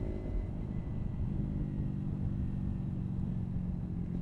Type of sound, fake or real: real